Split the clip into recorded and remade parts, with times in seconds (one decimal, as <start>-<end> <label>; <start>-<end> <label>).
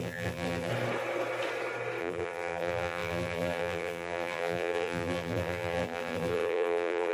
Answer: 0.0-0.7 remade; 0.7-2.0 recorded; 2.0-7.1 remade